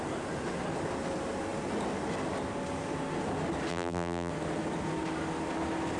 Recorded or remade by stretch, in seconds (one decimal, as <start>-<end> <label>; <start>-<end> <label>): 0.0-3.7 recorded; 3.7-4.3 remade; 4.3-6.0 recorded